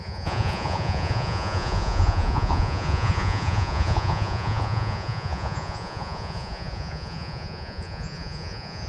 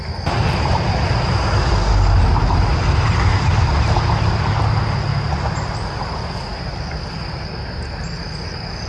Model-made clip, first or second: first